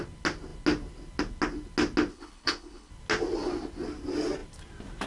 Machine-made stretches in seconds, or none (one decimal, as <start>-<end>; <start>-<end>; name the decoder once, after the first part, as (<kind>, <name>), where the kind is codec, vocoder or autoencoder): 2.1-2.9 (codec, HILCodec)